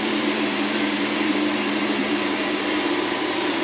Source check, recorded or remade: remade